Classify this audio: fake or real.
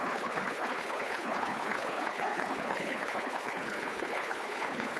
fake